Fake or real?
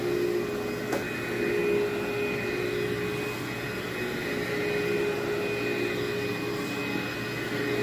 real